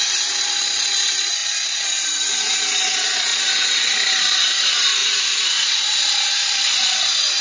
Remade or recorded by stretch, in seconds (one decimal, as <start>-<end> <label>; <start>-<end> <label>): 0.0-3.3 recorded; 3.3-4.1 remade; 4.1-5.0 recorded; 5.0-5.8 remade; 5.8-7.4 recorded